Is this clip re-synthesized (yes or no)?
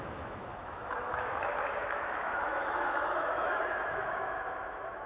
yes